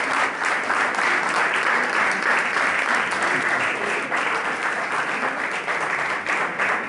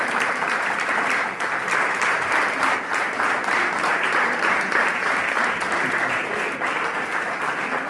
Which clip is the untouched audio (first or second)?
first